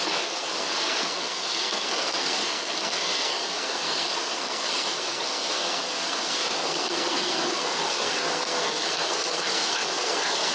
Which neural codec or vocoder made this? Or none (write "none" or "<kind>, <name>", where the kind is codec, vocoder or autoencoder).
codec, SNAC